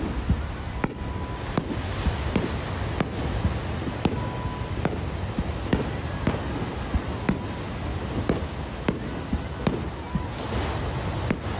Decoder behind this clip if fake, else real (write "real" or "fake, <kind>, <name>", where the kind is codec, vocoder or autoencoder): real